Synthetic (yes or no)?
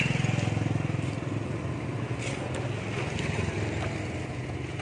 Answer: no